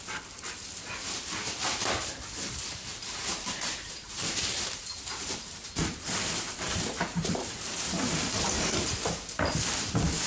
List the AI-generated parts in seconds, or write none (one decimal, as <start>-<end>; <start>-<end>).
2.9-7.9

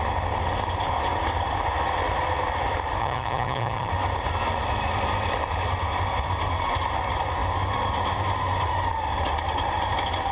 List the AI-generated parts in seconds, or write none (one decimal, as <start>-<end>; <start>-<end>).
3.0-3.9

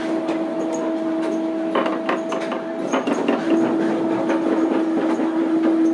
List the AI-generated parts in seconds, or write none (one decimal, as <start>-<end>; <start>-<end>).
none

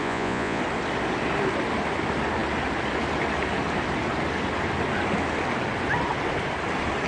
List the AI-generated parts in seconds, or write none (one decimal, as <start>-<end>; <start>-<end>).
0.0-0.6

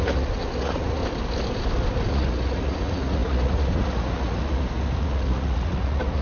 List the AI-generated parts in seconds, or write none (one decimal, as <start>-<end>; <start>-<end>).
0.0-1.0; 2.0-6.2

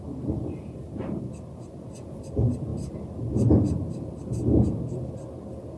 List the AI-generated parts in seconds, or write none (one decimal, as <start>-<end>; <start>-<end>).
none

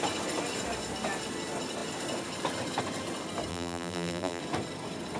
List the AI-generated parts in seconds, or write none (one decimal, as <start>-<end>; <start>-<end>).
3.5-4.4

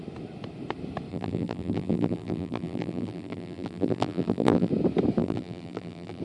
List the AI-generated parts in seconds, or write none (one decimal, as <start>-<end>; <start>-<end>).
1.1-4.7; 5.2-6.2